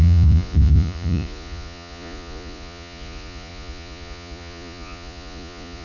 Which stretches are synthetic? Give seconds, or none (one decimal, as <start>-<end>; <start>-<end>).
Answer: 0.0-5.8